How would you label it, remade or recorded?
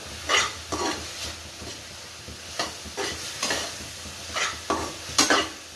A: recorded